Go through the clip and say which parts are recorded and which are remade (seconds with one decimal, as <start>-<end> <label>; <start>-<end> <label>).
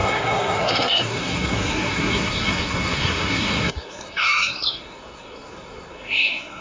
0.0-6.6 remade